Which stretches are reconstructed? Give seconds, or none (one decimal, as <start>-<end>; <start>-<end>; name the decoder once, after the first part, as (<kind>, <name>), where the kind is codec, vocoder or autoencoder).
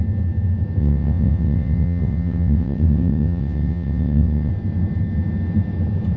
0.8-4.5 (vocoder, WaveNeXt)